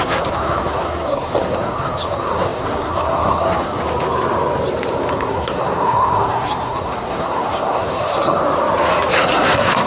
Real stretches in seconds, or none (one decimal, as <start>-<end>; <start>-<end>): 3.8-5.1; 8.4-9.1